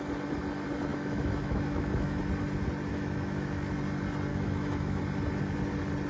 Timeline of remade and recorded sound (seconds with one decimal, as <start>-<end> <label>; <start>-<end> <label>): 0.0-0.9 recorded; 0.9-2.2 remade; 2.2-2.9 recorded; 2.9-3.7 remade; 3.7-4.3 recorded; 4.3-5.0 remade; 5.0-6.1 recorded

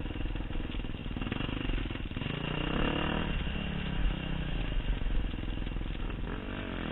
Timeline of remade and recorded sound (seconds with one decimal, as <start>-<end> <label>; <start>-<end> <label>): 0.0-4.0 recorded; 4.0-4.6 remade; 4.6-6.9 recorded

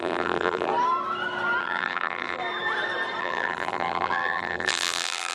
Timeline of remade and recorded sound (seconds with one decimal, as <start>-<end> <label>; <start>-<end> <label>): 0.0-0.7 remade; 0.7-1.6 recorded; 1.6-2.4 remade; 2.4-3.2 recorded; 3.2-5.3 remade

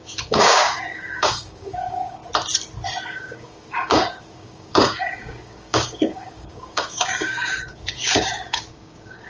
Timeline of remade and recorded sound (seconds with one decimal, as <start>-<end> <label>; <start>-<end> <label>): 0.0-2.2 remade; 2.2-3.0 recorded; 3.0-9.3 remade

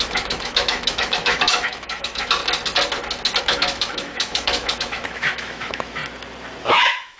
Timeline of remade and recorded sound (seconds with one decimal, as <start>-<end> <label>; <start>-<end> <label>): 0.0-2.4 remade; 2.4-3.4 recorded; 3.4-6.0 remade; 6.0-6.6 recorded; 6.6-7.2 remade

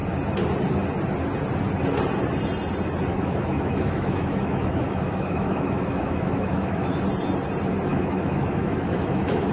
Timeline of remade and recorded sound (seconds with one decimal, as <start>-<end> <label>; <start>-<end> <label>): 0.0-3.1 recorded; 3.1-7.0 remade; 7.0-7.9 recorded; 7.9-9.5 remade

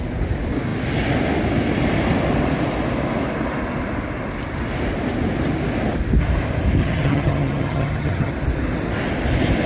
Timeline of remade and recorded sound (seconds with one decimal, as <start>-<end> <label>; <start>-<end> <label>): 0.0-6.8 recorded; 6.8-8.3 remade; 8.3-9.7 recorded

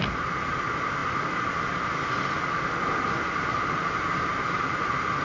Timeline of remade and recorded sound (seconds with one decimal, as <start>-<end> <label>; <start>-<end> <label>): 0.0-5.2 recorded